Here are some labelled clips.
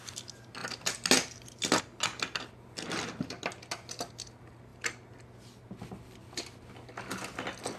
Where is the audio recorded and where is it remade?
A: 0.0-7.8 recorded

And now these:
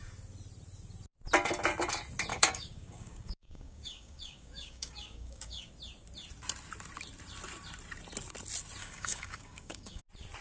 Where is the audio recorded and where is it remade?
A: 0.0-2.3 recorded; 2.3-5.7 remade; 5.7-8.8 recorded; 8.8-10.0 remade; 10.0-10.4 recorded